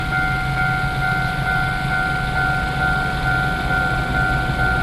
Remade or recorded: recorded